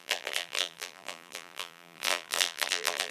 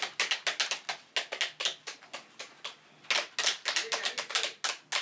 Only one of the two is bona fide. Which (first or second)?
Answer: second